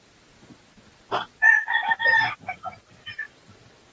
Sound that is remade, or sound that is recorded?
recorded